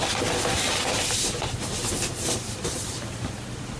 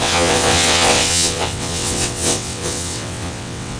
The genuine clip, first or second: first